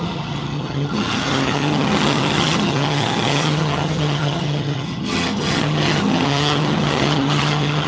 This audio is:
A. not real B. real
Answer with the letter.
A